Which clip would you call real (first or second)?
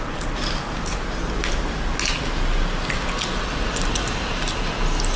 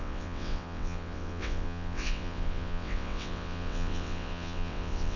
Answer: first